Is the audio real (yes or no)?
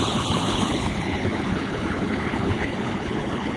no